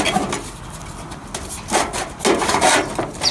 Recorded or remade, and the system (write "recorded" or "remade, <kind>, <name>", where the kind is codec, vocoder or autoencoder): recorded